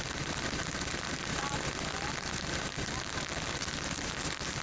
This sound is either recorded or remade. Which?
recorded